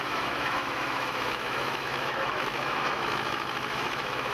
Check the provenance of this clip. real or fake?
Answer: fake